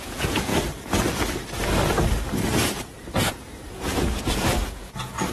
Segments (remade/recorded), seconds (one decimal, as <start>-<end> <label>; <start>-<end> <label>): 0.0-0.5 remade; 0.5-3.3 recorded; 3.3-5.3 remade